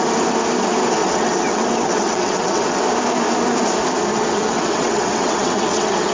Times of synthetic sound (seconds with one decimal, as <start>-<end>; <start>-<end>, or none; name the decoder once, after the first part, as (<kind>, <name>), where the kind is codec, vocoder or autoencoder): 1.0-2.8 (vocoder, WaveNeXt); 4.1-6.1